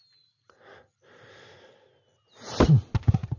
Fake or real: real